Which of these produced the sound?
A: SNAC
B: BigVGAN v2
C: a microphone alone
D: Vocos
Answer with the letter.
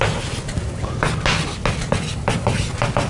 C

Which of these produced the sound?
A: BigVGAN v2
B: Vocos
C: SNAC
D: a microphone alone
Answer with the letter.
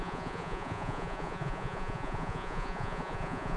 B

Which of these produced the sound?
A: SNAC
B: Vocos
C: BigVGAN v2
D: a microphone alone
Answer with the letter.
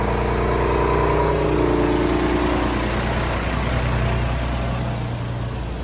D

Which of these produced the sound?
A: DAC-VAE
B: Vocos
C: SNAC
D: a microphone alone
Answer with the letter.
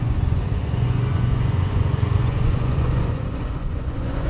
B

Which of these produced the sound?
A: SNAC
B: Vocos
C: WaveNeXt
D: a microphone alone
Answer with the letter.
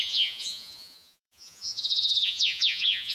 B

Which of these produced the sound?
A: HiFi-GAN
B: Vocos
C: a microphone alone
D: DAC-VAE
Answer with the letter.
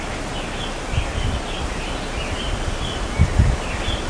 C